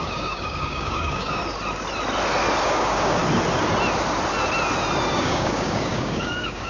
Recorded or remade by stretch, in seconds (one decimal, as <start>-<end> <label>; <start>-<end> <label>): 0.0-1.4 remade; 1.4-2.6 recorded; 2.6-3.2 remade; 3.2-5.1 recorded; 5.1-6.7 remade